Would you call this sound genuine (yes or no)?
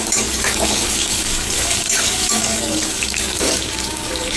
no